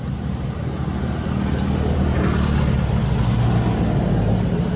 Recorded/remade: recorded